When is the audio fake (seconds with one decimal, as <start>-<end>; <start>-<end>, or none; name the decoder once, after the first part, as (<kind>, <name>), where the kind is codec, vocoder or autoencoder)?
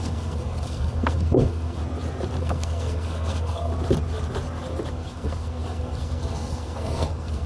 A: 0.0-1.8 (codec, SNAC); 2.4-3.7; 4.9-7.5